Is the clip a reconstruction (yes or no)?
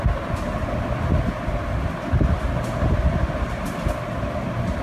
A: no